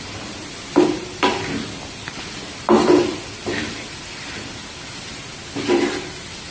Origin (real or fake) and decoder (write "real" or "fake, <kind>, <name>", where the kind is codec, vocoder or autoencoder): real